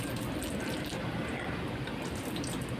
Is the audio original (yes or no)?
yes